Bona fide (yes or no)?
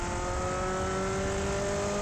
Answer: yes